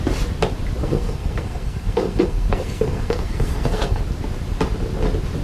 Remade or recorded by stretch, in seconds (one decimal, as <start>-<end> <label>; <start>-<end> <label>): 0.0-0.8 recorded; 0.8-4.0 remade; 4.0-5.4 recorded